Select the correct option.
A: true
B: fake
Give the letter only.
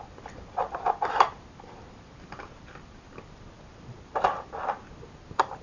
A